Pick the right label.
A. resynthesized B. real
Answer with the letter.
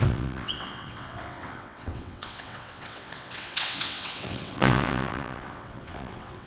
A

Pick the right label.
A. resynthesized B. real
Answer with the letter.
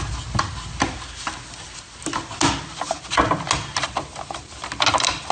B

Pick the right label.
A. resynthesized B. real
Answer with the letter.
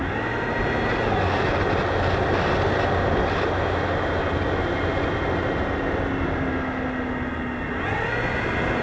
B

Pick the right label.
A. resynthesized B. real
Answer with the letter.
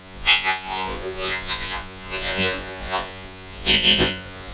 A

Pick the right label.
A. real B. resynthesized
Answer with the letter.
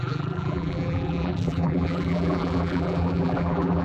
B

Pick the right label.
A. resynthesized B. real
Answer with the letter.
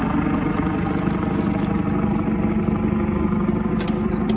B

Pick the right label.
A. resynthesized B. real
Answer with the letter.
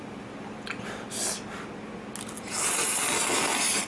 B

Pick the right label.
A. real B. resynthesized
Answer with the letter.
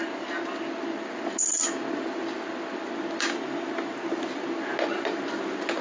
A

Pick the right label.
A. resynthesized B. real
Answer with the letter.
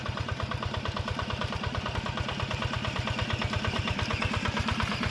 A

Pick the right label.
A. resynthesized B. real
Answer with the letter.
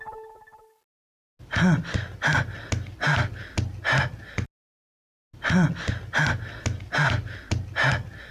B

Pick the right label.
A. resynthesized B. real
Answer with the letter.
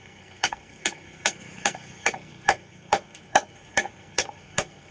A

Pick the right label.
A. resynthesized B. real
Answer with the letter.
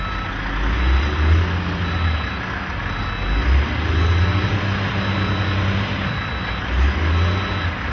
B